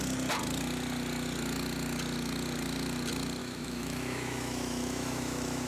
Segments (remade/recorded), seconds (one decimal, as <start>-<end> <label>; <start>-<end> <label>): 0.0-3.4 recorded; 3.4-5.7 remade